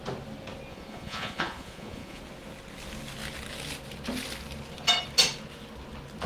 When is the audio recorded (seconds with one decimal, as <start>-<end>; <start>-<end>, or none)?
0.0-0.7; 2.2-6.3